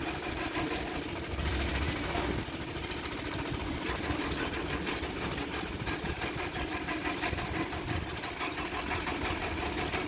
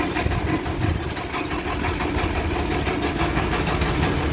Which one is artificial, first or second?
first